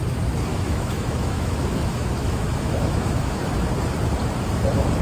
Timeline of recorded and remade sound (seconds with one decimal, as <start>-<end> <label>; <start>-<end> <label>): 0.0-0.5 recorded; 0.5-3.5 remade; 3.5-5.0 recorded